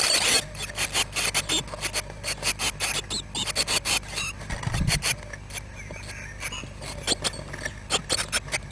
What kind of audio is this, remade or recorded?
recorded